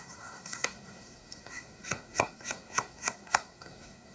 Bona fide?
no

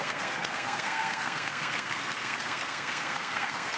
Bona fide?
no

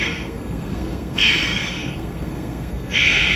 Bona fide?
no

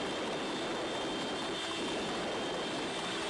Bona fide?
yes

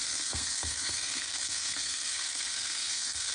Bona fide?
no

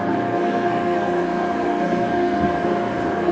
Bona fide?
no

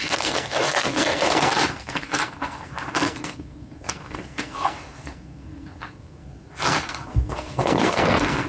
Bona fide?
no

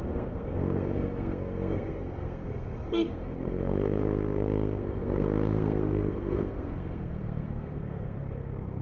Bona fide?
no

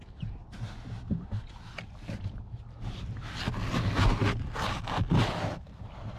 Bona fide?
yes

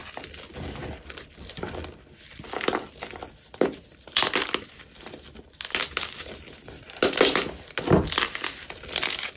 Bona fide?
yes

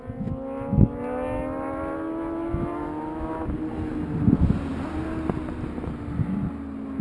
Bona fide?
yes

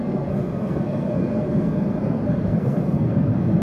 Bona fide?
no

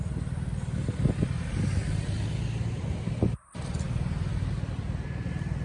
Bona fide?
yes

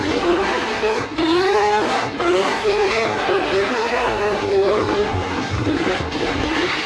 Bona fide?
no